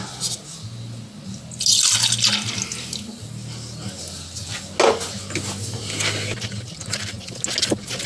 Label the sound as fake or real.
real